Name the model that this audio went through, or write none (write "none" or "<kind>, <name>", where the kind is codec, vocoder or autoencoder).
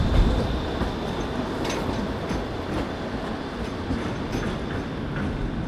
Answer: none